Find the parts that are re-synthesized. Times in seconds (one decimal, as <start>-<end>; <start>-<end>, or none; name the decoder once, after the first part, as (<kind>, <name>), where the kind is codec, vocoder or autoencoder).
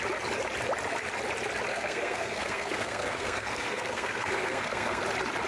1.7-5.0 (codec, SNAC)